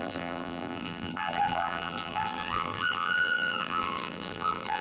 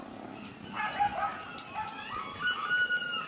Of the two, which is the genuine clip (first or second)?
second